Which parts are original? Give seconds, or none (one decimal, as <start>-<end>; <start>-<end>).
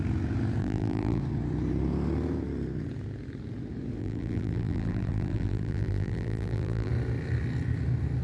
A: 0.0-0.6; 1.2-4.0; 6.9-8.2